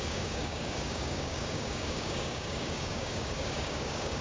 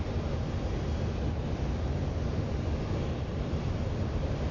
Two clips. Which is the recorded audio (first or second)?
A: second